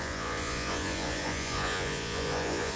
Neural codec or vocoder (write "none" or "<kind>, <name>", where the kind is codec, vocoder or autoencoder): vocoder, Vocos